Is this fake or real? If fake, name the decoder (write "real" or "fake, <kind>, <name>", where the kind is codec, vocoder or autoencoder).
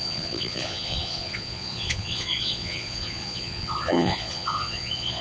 fake, vocoder, Vocos